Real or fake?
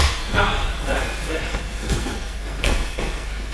fake